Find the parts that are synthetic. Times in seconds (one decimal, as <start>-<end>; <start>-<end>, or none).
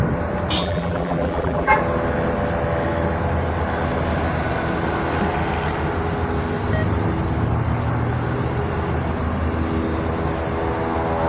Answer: 0.6-1.8